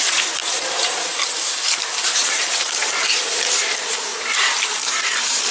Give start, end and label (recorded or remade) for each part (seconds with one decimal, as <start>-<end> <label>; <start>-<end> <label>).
0.0-5.5 remade